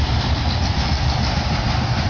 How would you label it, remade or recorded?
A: recorded